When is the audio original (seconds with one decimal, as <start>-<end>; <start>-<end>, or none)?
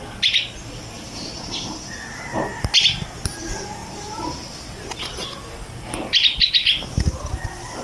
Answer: 0.0-7.8